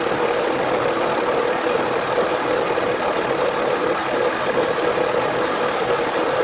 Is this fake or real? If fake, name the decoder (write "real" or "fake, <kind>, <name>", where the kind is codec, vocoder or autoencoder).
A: real